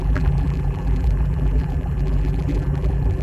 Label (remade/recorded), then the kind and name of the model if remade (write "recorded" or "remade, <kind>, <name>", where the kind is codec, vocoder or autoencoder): remade, vocoder, BigVGAN v2